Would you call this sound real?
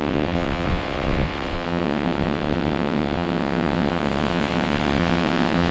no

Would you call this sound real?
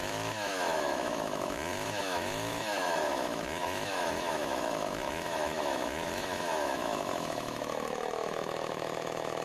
no